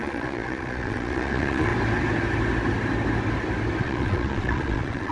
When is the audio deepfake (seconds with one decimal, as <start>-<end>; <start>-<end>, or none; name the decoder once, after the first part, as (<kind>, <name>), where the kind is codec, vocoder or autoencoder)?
0.0-1.7 (vocoder, Vocos); 3.8-5.1